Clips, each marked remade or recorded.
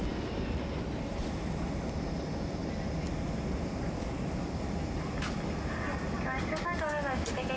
recorded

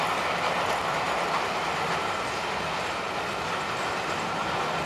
recorded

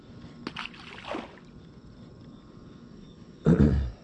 recorded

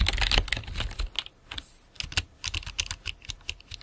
recorded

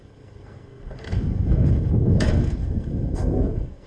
remade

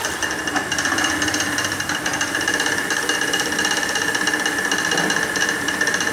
remade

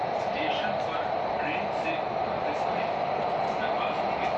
recorded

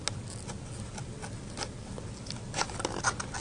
recorded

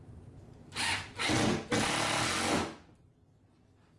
recorded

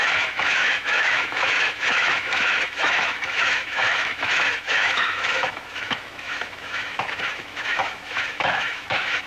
remade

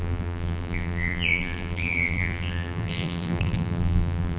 remade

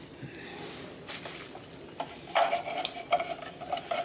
remade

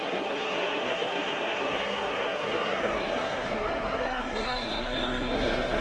remade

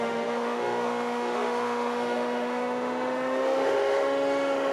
remade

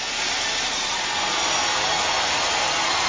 recorded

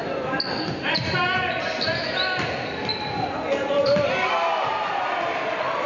recorded